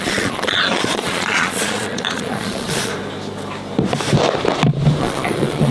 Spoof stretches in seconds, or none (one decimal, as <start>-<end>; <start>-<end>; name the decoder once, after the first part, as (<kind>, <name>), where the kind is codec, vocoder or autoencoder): 0.0-2.9 (vocoder, Vocos); 5.0-5.7